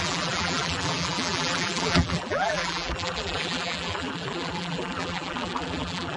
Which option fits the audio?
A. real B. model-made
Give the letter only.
B